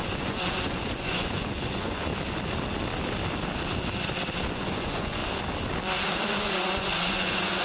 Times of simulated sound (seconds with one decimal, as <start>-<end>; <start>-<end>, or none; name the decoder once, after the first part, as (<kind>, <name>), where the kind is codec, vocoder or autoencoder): 0.0-2.1 (vocoder, Vocos); 4.5-5.2; 6.3-7.6